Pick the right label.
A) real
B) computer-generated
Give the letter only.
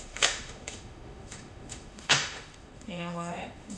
B